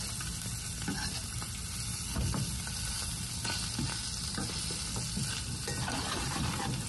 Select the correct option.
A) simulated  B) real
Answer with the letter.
B